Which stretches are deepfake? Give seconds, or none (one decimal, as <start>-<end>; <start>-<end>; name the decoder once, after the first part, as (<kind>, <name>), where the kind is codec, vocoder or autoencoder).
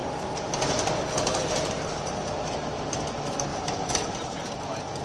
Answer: 0.0-3.0 (vocoder, BigVGAN v2); 3.5-4.5